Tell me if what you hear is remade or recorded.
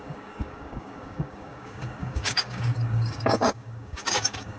remade